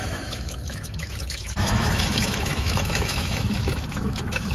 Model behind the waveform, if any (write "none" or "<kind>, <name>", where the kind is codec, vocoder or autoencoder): autoencoder, DAC-VAE